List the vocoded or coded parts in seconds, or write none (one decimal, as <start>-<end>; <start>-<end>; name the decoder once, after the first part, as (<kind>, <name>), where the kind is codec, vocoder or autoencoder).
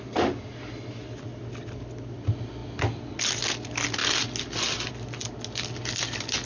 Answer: none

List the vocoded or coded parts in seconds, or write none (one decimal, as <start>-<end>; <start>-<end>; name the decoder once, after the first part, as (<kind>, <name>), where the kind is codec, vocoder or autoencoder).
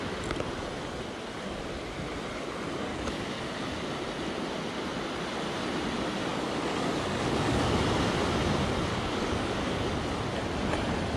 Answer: 2.9-3.4 (codec, DAC); 6.3-7.8; 8.9-9.9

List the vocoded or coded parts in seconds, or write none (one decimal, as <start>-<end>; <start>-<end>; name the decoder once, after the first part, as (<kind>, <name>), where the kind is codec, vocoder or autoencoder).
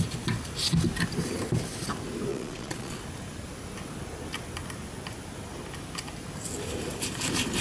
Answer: 2.3-3.0 (vocoder, Vocos)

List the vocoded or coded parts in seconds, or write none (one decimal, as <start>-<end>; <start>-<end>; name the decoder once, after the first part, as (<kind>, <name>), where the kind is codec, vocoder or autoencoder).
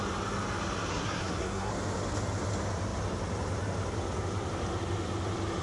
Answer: 0.9-1.7 (codec, SNAC)